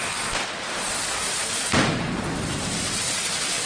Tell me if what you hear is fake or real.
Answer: real